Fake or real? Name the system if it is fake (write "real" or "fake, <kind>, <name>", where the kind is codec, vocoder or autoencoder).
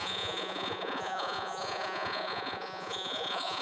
fake, vocoder, Vocos